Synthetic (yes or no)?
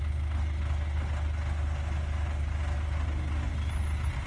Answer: no